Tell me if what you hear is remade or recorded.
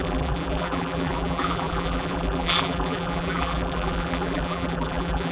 remade